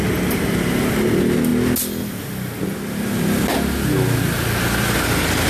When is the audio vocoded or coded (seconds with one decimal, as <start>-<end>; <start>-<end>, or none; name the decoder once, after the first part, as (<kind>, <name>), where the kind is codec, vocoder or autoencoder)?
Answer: none